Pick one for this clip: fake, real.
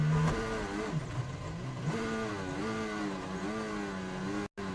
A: real